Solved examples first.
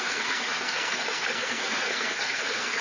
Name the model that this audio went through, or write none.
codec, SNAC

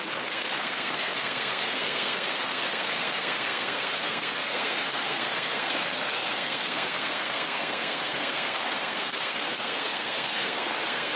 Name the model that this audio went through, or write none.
codec, SNAC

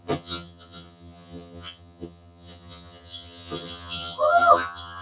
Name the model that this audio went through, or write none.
vocoder, HiFi-GAN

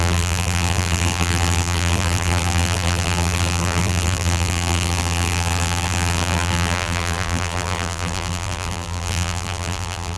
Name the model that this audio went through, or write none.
vocoder, BigVGAN v2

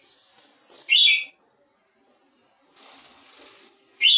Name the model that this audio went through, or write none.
none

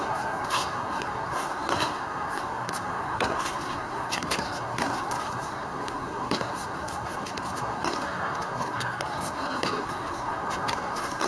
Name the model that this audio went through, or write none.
codec, SNAC